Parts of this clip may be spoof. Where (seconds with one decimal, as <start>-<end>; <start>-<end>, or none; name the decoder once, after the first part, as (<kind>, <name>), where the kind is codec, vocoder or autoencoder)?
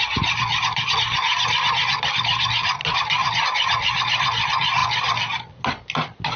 none